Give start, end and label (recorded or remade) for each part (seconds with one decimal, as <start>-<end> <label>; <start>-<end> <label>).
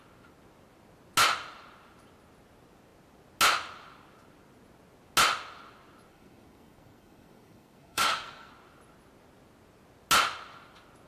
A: 0.0-6.1 recorded; 6.1-8.5 remade; 8.5-11.1 recorded